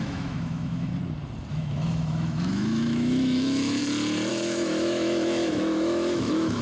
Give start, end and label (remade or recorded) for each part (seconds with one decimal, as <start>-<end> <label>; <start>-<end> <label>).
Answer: 0.0-0.9 remade; 0.9-1.5 recorded; 1.5-3.8 remade; 3.8-4.3 recorded; 4.3-6.6 remade